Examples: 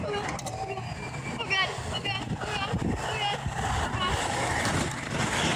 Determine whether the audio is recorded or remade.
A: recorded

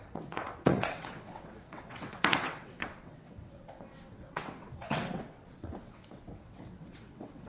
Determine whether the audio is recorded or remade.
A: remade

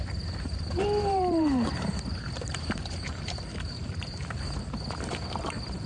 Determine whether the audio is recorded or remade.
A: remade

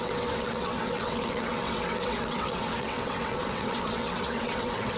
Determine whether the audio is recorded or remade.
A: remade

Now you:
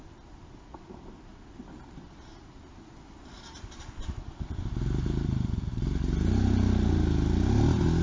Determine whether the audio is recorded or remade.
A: recorded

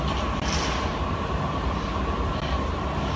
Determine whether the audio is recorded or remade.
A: recorded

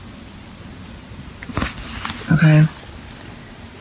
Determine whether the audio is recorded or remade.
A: recorded